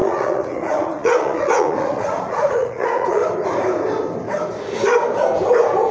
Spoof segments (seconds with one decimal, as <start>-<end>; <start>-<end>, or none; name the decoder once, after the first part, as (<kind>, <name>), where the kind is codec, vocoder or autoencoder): 0.0-3.2 (vocoder, Vocos)